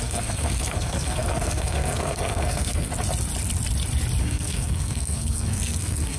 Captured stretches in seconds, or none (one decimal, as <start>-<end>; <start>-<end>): 2.9-4.2